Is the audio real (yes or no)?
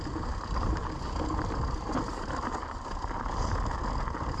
yes